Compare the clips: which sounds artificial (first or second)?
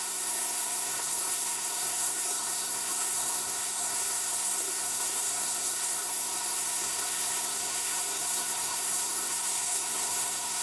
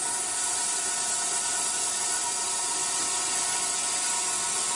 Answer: first